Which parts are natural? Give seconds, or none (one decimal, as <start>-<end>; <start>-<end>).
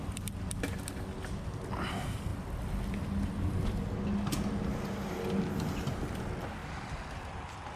0.0-7.8